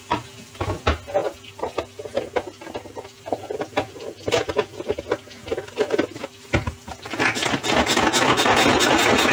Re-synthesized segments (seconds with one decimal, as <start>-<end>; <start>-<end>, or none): 5.5-7.9